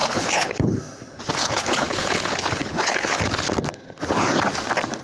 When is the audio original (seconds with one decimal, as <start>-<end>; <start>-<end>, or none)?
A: 0.8-1.4; 3.2-5.0